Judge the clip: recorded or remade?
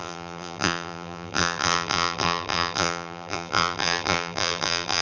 remade